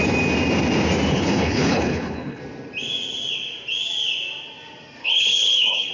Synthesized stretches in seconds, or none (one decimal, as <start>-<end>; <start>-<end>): 1.1-2.4; 5.0-5.9